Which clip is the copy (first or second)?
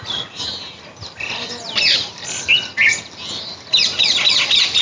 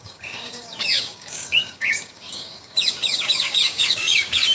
second